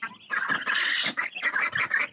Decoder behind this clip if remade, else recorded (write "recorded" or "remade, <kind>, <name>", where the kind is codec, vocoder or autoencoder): recorded